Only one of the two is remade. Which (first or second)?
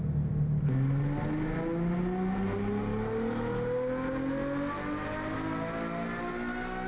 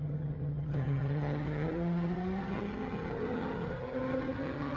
second